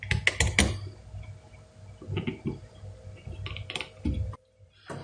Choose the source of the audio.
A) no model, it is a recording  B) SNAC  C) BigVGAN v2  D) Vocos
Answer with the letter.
A